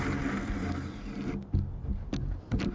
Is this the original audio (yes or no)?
yes